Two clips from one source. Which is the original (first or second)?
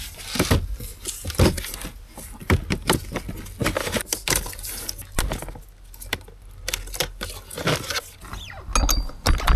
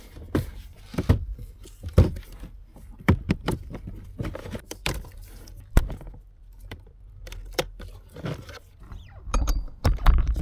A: first